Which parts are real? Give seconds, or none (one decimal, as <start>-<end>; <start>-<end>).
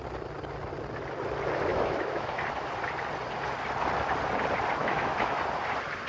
0.0-1.7; 2.4-4.8; 5.4-6.1